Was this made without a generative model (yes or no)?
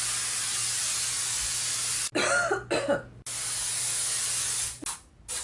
yes